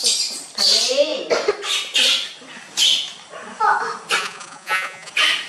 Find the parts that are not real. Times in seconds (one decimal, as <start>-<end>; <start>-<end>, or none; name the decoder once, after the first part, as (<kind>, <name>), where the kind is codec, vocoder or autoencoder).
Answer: 4.2-5.1 (vocoder, Vocos)